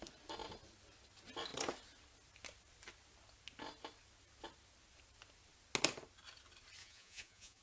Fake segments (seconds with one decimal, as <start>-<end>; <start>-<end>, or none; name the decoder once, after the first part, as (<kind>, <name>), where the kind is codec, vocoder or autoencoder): 6.8-7.6 (vocoder, Vocos)